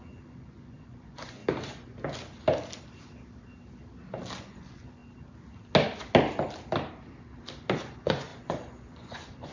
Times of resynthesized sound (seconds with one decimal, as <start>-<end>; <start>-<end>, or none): 0.0-1.4; 4.4-5.0; 7.8-9.5